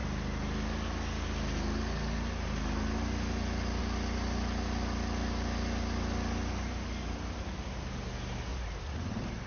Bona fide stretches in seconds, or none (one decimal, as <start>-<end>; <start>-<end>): 0.0-8.5